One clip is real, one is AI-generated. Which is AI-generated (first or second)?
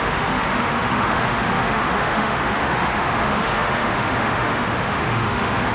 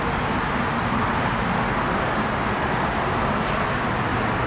first